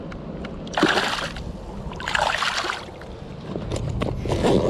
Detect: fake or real real